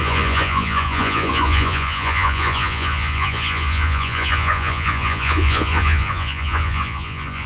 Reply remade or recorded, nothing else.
remade